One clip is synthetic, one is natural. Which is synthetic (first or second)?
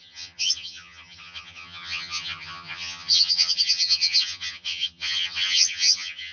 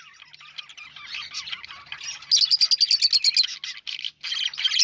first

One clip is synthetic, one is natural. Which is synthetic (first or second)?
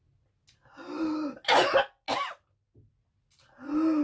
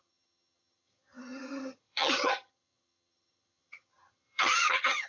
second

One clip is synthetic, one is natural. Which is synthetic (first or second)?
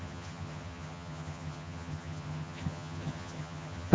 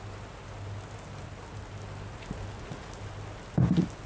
first